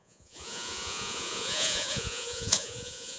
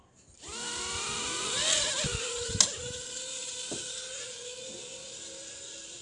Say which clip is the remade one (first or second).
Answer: first